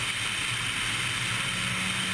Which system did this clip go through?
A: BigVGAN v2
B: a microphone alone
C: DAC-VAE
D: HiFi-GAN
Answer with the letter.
B